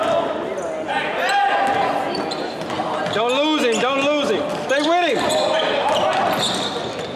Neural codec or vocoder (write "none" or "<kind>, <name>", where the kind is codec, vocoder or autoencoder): none